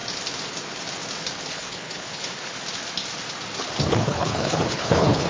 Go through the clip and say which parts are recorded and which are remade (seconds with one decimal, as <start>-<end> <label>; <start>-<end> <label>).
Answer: 0.0-1.5 recorded; 1.5-2.5 remade; 2.5-3.9 recorded; 3.9-5.3 remade